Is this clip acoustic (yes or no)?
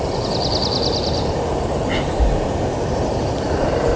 yes